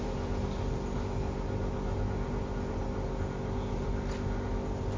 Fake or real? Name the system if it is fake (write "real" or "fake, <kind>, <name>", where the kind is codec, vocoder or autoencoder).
real